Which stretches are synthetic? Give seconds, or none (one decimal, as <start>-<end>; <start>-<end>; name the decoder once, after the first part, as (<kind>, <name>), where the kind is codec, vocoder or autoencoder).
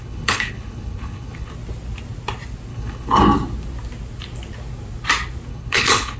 0.0-1.5 (codec, HILCodec); 2.7-3.2; 5.5-6.2